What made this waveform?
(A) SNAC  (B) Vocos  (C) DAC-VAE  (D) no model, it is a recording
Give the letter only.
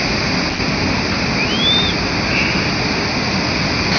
D